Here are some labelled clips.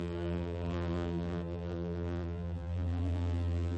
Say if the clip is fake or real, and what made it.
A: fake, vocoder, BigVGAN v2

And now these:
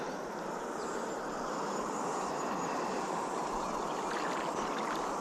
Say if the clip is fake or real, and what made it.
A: real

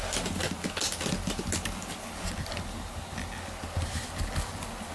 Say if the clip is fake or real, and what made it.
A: real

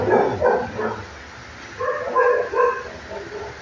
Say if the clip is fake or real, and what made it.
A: real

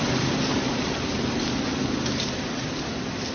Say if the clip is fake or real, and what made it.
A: real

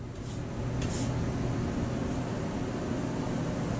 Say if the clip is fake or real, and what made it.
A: real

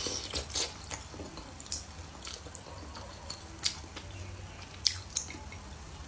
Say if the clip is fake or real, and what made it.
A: real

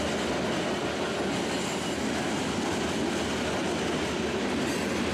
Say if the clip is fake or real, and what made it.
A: real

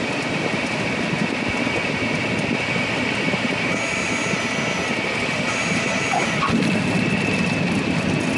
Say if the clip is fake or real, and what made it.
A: real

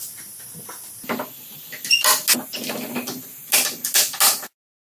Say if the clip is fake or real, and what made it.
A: real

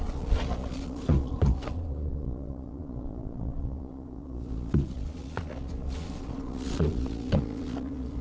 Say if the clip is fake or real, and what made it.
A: fake, vocoder, Vocos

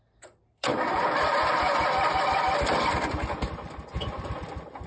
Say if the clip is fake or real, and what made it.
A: fake, vocoder, BigVGAN v2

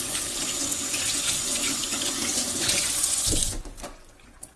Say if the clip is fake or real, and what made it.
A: fake, vocoder, Vocos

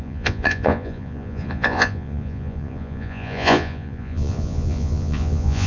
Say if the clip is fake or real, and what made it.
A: fake, vocoder, Vocos